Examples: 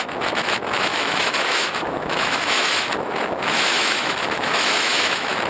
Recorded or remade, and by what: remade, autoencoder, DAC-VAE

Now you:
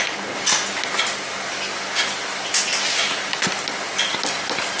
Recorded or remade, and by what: recorded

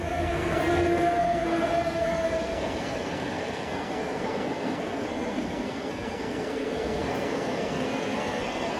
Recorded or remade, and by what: remade, codec, SNAC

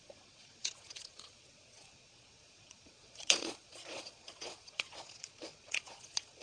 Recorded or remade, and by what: remade, vocoder, Vocos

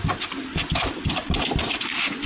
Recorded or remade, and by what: recorded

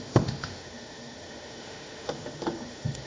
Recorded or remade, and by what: remade, autoencoder, DAC-VAE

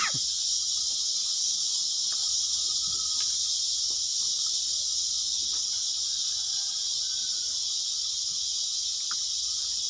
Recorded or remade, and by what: recorded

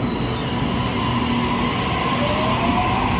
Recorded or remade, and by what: recorded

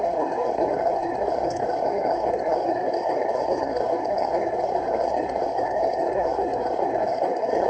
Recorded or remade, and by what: remade, codec, SNAC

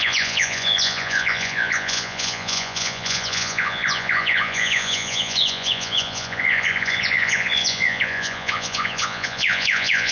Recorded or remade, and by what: remade, vocoder, Vocos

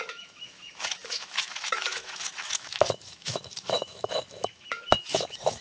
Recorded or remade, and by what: remade, autoencoder, DAC-VAE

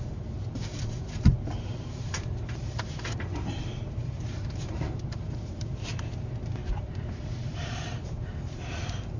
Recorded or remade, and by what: remade, vocoder, BigVGAN v2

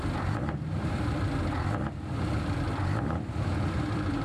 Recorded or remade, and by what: remade, vocoder, BigVGAN v2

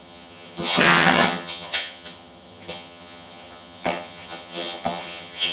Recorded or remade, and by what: remade, vocoder, HiFi-GAN